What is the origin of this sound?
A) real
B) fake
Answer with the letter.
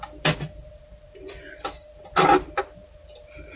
A